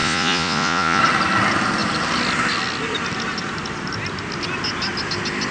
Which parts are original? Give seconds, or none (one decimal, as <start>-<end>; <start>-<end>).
1.0-5.5